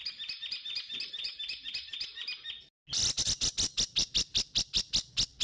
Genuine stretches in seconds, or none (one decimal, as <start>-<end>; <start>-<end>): 0.0-5.4